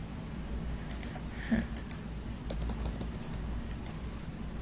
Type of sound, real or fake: real